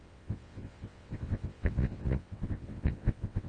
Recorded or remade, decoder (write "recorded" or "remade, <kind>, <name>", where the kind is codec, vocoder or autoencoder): remade, vocoder, WaveNeXt